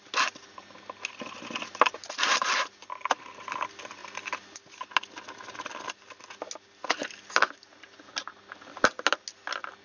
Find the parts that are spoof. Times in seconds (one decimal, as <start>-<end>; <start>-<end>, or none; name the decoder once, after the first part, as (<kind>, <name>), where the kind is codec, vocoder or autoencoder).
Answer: none